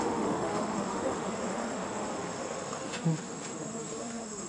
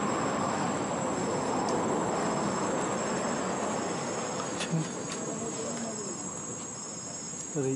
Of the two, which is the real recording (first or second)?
second